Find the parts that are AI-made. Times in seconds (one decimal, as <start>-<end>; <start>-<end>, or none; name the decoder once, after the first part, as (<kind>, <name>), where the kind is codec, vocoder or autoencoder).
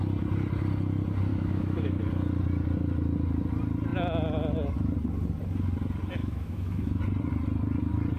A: 1.3-2.0 (autoencoder, DAC-VAE); 6.2-7.0